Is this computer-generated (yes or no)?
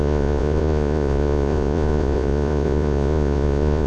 yes